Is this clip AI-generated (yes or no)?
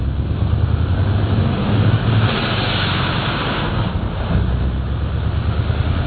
no